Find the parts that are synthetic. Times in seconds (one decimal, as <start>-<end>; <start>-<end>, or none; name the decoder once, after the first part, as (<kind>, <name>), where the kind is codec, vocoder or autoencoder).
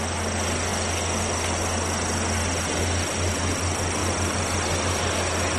none